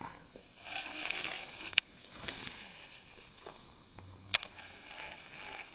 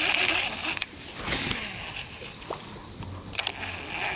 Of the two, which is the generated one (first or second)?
first